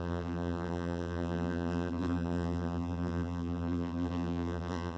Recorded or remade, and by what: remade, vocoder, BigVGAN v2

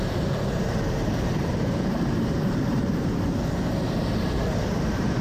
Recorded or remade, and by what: remade, vocoder, BigVGAN v2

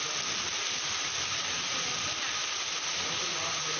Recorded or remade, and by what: recorded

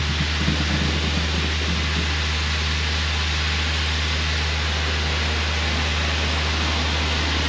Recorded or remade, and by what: recorded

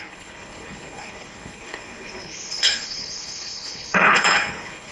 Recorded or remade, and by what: remade, codec, HILCodec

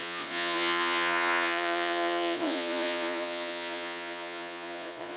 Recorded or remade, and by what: remade, vocoder, Vocos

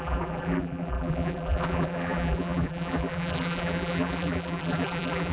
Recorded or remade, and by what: remade, vocoder, BigVGAN v2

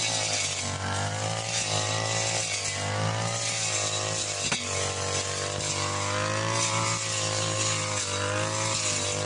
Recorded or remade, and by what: recorded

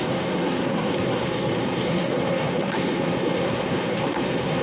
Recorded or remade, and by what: remade, codec, SNAC